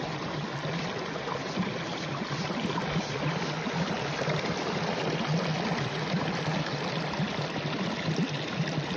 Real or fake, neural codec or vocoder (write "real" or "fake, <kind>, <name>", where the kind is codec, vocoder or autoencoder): real